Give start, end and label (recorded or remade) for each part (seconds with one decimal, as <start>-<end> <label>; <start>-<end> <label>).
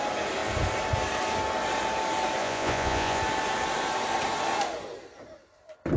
0.0-2.4 recorded; 2.4-3.2 remade; 3.2-6.0 recorded